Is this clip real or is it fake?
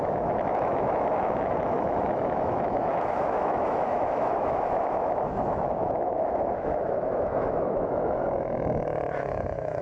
fake